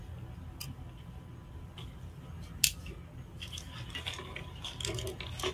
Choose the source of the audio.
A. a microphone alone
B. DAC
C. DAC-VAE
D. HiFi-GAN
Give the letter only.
A